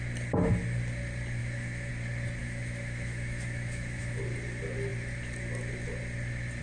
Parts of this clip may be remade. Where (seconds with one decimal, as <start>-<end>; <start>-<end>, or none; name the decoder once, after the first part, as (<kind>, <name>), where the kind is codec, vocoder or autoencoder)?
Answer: 1.4-1.9 (autoencoder, DAC-VAE); 2.4-4.2